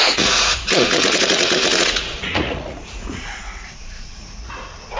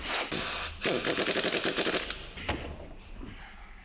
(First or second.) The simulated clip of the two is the first